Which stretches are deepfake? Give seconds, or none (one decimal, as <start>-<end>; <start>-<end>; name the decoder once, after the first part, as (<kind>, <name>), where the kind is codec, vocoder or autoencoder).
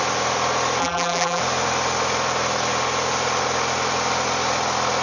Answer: 0.8-1.4 (vocoder, BigVGAN v2)